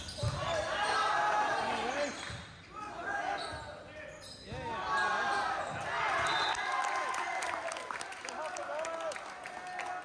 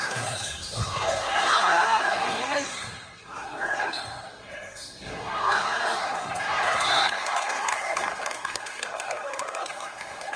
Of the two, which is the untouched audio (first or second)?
first